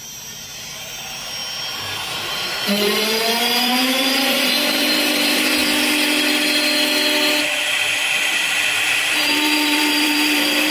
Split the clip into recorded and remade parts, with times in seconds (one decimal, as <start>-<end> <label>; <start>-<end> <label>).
0.0-1.4 remade; 1.4-2.1 recorded; 2.1-5.6 remade; 5.6-8.8 recorded; 8.8-10.7 remade